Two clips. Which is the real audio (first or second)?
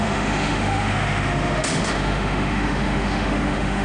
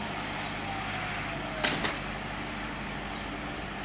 second